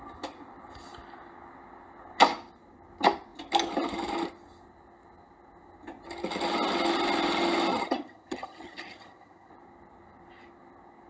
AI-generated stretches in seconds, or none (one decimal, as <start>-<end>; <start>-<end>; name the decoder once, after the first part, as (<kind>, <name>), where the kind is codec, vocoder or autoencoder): 7.7-9.5 (vocoder, HiFi-GAN)